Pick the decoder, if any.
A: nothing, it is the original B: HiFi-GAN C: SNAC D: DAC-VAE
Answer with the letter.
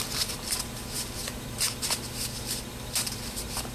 A